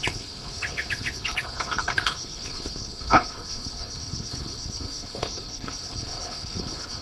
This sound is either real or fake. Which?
fake